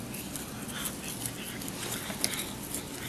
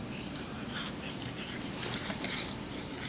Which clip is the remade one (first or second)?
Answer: second